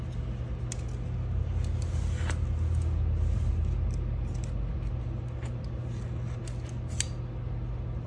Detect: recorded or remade recorded